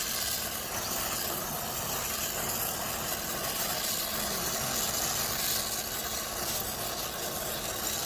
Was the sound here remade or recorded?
recorded